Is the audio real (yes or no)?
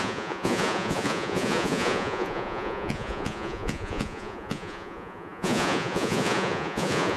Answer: no